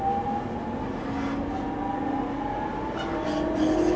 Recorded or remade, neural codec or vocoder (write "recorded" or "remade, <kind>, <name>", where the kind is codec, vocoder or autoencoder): recorded